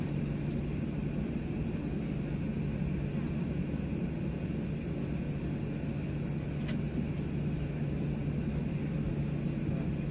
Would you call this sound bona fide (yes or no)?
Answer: yes